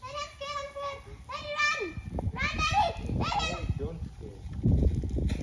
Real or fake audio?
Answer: real